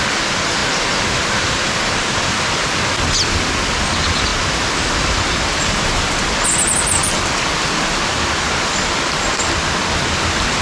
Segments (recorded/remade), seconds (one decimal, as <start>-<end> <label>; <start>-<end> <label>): 0.0-10.6 recorded